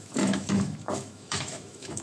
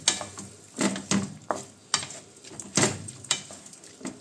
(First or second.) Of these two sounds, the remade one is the first